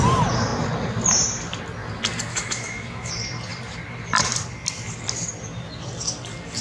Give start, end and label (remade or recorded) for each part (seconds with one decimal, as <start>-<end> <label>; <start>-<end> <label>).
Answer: 0.0-2.3 recorded; 2.3-3.1 remade; 3.1-6.6 recorded

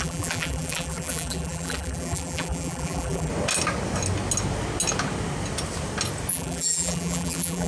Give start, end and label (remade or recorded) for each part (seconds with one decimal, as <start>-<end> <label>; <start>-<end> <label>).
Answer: 0.0-3.3 remade; 3.3-6.3 recorded; 6.3-7.7 remade

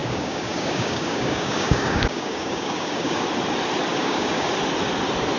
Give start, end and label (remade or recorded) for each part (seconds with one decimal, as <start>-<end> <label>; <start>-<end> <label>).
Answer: 0.0-3.2 remade; 3.2-3.9 recorded; 3.9-4.5 remade; 4.5-5.4 recorded

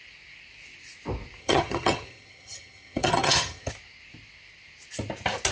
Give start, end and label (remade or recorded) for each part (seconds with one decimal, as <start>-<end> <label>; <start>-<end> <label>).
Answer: 0.0-1.4 recorded; 1.4-3.7 remade; 3.7-5.5 recorded